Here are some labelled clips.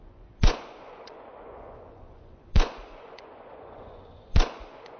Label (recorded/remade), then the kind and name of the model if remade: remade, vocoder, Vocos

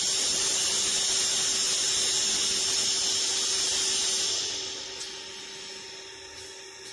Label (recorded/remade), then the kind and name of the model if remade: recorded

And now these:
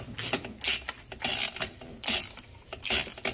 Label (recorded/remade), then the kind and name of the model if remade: recorded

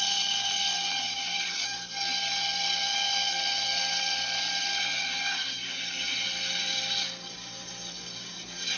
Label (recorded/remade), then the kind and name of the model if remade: recorded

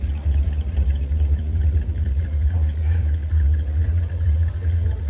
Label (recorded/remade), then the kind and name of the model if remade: remade, vocoder, Vocos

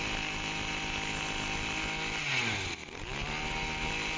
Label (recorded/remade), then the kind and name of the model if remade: recorded